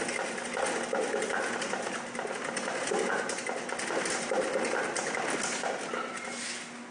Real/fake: real